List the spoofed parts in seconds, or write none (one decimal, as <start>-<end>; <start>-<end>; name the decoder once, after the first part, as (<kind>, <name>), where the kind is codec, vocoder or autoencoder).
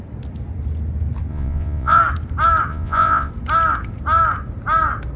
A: 1.3-2.0 (vocoder, Vocos); 2.7-3.3